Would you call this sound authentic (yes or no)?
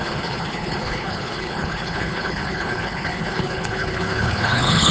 no